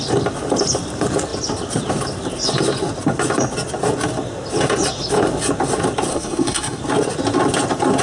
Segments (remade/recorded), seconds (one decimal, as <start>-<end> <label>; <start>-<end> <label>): 0.0-6.1 recorded; 6.1-6.8 remade; 6.8-8.0 recorded